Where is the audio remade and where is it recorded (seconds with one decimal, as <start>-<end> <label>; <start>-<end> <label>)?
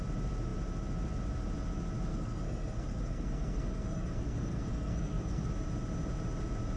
0.0-2.1 recorded; 2.1-5.5 remade; 5.5-6.8 recorded